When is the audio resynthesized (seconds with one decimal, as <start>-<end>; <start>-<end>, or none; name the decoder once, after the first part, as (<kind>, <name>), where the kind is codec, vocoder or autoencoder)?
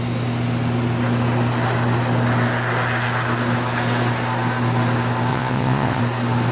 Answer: 5.3-6.0 (vocoder, WaveNeXt)